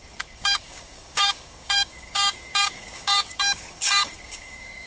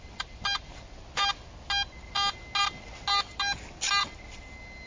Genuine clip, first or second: second